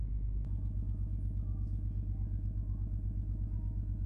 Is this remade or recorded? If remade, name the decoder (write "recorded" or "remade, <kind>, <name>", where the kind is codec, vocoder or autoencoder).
recorded